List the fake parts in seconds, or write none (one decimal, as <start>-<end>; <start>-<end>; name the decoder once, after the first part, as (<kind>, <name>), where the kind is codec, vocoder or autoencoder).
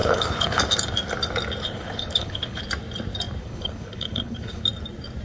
0.0-0.6 (codec, HILCodec); 1.6-2.6; 3.4-4.6